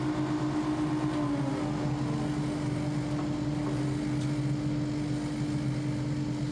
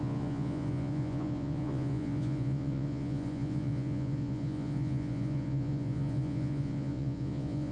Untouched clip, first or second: first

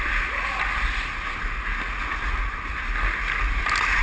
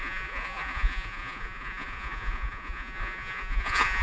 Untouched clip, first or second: first